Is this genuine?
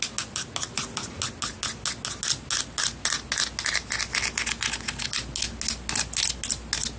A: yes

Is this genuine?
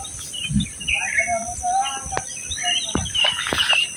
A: yes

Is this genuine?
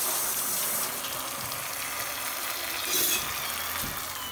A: yes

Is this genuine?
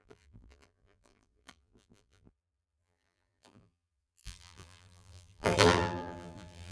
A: no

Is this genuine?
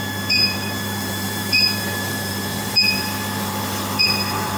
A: no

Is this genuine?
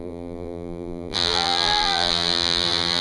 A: no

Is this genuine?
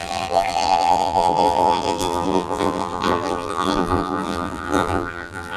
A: no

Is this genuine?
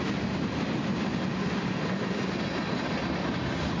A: yes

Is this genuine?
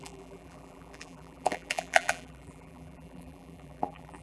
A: no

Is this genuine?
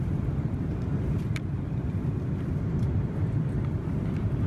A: no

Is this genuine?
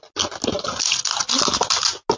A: yes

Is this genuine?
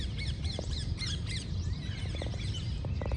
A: no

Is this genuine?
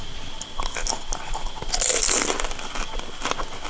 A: yes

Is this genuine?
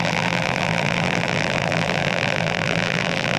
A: no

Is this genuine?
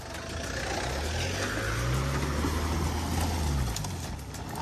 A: yes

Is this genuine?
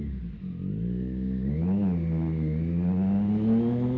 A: yes